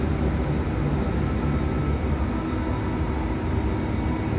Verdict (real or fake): real